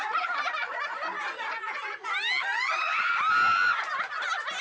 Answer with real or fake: real